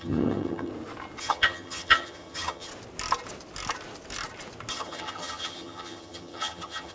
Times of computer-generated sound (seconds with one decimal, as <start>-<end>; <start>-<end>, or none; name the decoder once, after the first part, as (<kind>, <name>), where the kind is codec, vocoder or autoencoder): 0.0-0.7 (vocoder, HiFi-GAN); 1.2-2.7; 4.7-6.9